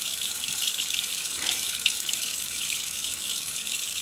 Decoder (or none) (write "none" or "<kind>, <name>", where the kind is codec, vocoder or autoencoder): codec, DAC